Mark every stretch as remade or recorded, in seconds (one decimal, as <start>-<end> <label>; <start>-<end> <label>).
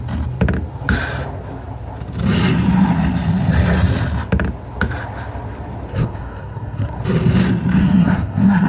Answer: 0.0-5.9 recorded; 5.9-7.0 remade; 7.0-7.8 recorded; 7.8-8.7 remade